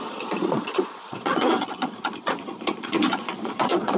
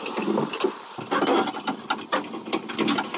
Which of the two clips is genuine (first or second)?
second